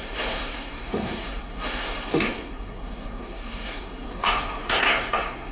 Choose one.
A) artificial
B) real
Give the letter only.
A